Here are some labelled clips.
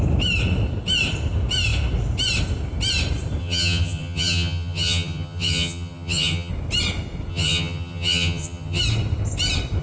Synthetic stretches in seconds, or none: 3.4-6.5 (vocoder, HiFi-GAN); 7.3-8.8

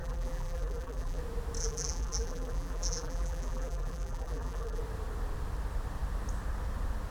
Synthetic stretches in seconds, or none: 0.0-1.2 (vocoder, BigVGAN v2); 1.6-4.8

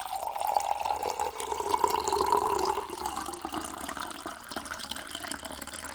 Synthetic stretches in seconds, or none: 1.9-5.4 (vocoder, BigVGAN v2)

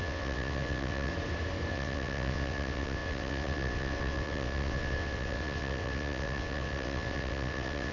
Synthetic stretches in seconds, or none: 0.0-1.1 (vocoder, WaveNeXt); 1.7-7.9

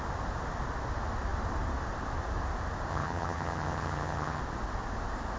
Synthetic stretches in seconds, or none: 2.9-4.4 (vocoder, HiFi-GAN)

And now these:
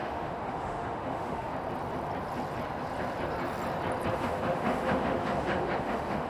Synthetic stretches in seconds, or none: 0.0-1.5 (autoencoder, DAC-VAE); 4.1-6.3

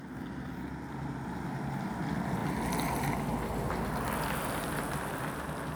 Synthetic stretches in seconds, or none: none

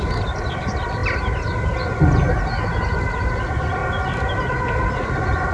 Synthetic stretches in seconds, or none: 0.0-1.0 (vocoder, BigVGAN v2); 3.3-3.8; 4.9-5.5